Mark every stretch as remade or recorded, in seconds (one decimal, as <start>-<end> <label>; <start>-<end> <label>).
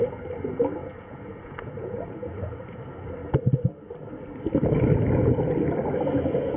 0.0-0.8 recorded; 0.8-2.8 remade; 2.8-6.6 recorded